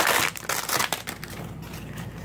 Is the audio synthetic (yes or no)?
no